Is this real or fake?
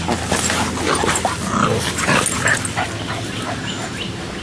real